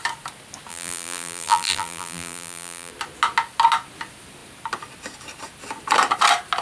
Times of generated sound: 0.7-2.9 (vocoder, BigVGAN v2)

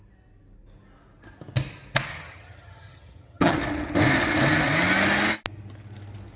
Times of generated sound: 2.1-3.6 (vocoder, HiFi-GAN)